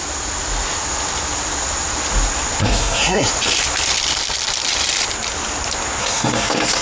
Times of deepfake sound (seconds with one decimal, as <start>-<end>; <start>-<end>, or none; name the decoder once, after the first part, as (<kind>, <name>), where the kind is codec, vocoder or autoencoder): 2.6-3.3 (codec, SNAC); 6.0-6.8